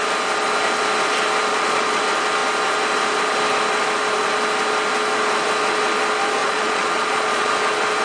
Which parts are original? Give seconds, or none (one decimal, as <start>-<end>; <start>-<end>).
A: 0.0-1.5; 2.0-6.4; 7.5-8.0